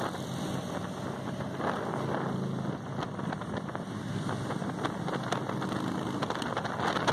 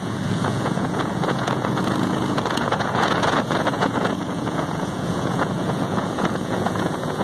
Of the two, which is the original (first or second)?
first